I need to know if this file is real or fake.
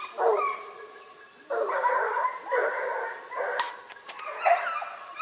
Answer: real